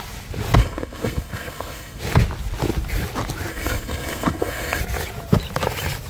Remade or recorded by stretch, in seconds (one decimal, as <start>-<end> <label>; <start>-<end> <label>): 0.0-0.6 recorded; 0.6-2.0 remade; 2.0-3.5 recorded; 3.5-4.8 remade; 4.8-6.1 recorded